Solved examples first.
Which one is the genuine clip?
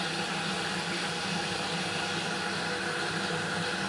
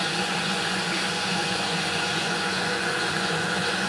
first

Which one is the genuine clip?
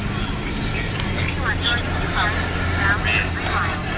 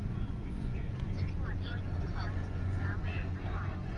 first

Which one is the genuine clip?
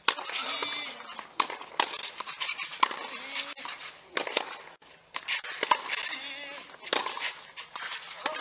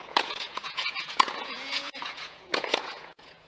first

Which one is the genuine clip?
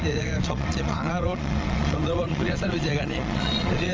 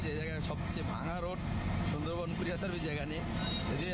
second